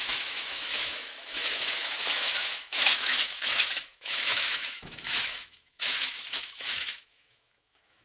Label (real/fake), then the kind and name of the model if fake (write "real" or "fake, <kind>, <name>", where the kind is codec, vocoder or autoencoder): fake, autoencoder, DAC-VAE